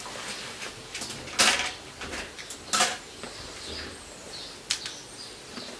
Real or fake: real